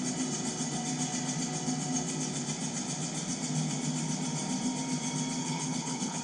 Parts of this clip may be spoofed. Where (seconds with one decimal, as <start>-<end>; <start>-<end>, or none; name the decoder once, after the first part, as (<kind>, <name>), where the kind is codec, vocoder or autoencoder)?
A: 5.4-6.2 (codec, HILCodec)